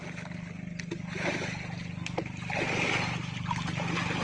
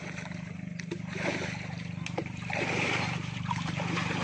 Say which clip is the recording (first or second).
first